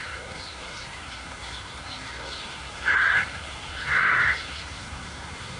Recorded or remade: remade